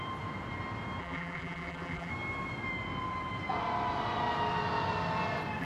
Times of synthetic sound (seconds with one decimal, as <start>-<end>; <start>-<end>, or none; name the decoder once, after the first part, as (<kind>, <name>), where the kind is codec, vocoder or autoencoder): 1.0-2.1 (vocoder, BigVGAN v2)